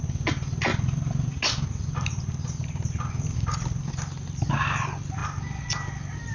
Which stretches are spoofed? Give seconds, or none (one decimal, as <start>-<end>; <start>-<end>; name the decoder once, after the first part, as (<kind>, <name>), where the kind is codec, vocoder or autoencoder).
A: none

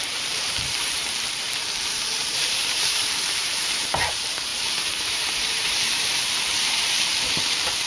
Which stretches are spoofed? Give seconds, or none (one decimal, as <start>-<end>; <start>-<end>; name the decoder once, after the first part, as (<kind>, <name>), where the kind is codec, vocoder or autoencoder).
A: 0.0-7.9 (vocoder, BigVGAN v2)

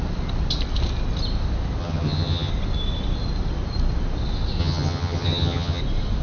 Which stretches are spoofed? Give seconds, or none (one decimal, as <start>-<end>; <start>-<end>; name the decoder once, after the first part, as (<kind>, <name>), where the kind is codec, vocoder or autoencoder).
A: 1.8-2.5 (vocoder, HiFi-GAN); 4.6-5.8

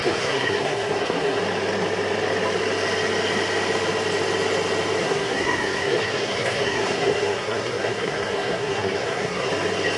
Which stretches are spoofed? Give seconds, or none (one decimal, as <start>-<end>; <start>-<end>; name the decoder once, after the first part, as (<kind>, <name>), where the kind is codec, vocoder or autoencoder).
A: 0.0-1.4 (codec, SNAC); 5.0-9.5

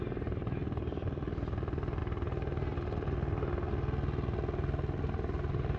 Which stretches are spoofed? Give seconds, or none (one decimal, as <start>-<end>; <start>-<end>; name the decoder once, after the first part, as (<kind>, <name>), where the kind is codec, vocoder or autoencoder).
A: none